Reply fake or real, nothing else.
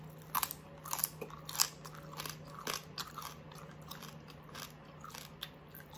real